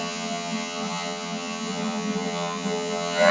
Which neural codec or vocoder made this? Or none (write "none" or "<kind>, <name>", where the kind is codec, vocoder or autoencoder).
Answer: vocoder, HiFi-GAN